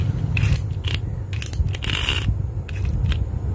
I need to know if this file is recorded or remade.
recorded